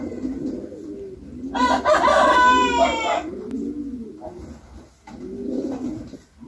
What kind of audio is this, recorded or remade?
recorded